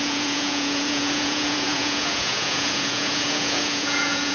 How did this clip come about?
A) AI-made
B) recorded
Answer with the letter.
A